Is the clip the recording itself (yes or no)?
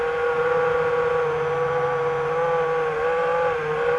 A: yes